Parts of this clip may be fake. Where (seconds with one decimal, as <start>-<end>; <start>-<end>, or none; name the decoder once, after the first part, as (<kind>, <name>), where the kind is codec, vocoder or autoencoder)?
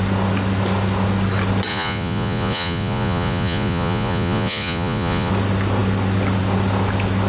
1.7-5.3 (vocoder, Vocos)